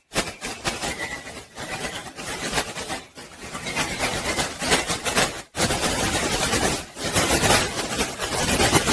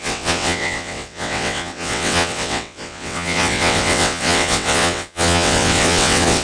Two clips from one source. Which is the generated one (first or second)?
second